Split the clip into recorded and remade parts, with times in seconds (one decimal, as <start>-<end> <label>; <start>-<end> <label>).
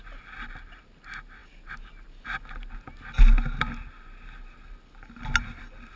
0.0-6.0 recorded